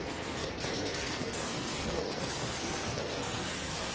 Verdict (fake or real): fake